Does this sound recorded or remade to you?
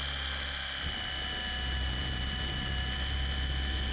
recorded